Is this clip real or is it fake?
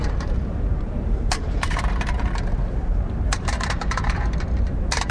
fake